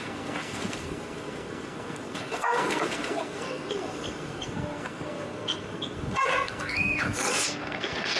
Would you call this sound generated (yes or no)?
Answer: yes